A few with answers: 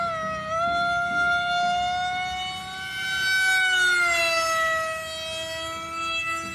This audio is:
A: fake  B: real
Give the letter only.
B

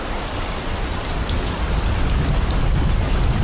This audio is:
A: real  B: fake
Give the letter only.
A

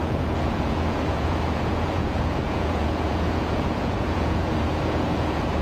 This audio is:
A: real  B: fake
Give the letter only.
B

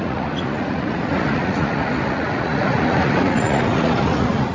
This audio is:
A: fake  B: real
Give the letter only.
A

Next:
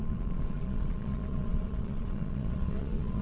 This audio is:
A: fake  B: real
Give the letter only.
A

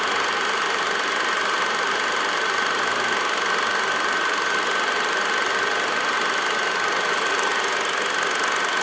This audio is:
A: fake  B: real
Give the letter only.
B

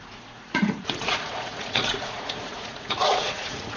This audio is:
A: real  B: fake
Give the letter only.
B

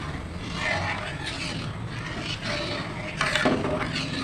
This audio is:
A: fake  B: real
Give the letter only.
B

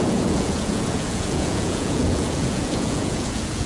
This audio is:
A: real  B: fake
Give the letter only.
B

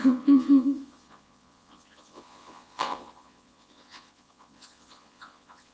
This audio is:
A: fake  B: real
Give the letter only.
A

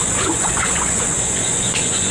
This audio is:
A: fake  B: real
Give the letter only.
A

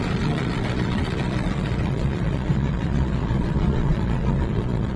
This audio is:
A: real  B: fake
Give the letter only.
B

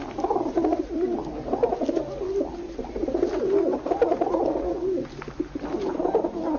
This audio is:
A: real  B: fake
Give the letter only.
A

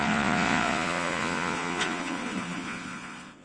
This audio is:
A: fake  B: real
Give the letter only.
A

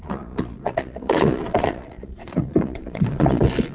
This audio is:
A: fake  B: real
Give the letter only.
A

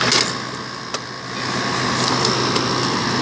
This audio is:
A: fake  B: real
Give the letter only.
B